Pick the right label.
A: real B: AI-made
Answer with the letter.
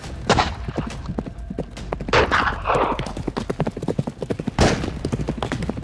A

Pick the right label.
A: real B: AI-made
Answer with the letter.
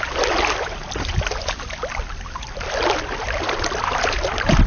A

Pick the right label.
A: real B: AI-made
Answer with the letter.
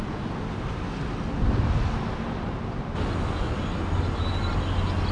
A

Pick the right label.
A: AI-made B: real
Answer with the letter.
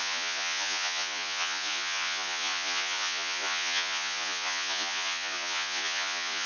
A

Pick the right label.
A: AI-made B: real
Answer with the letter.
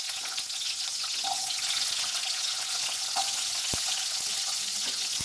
A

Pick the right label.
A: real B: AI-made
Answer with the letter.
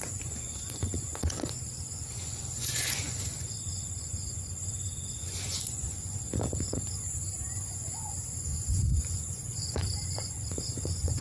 B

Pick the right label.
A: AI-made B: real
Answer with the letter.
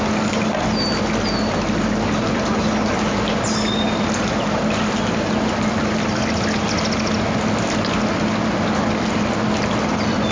B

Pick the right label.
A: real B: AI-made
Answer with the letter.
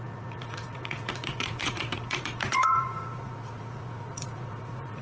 B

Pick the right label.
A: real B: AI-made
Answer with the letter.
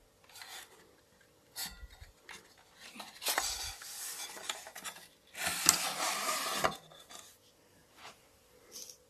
A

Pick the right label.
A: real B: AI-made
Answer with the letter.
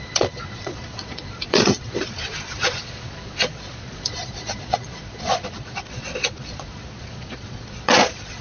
B